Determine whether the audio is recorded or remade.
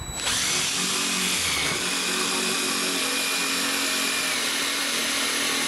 recorded